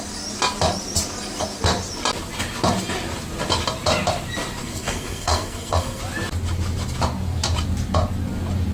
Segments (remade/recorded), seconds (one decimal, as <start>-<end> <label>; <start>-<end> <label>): 0.0-4.6 recorded; 4.6-6.0 remade; 6.0-8.7 recorded